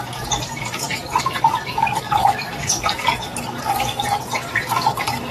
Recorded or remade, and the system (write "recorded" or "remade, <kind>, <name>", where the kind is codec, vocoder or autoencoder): remade, codec, DAC